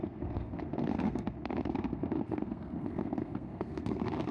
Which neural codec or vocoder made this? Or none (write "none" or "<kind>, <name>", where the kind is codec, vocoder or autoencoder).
codec, SNAC